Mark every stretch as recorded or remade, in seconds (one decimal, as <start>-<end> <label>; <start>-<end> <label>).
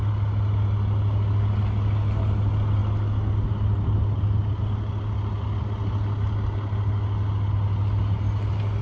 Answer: 0.0-8.8 recorded